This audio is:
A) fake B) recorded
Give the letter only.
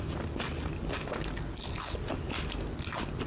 B